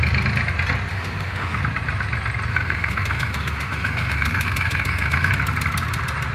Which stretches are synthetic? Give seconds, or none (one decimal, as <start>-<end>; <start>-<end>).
0.9-1.6; 2.5-5.3